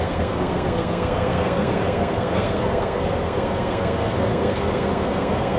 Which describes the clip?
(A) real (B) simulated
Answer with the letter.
B